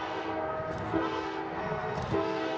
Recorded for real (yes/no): no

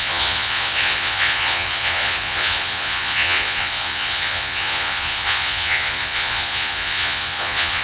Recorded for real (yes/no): no